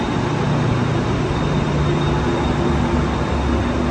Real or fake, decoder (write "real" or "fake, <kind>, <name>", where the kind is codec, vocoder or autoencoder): real